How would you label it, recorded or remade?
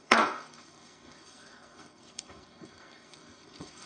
remade